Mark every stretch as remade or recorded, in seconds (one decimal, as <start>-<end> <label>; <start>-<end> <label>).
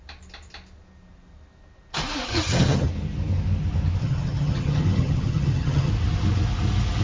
0.0-2.3 recorded; 2.3-2.9 remade; 2.9-4.0 recorded; 4.0-5.9 remade; 5.9-7.0 recorded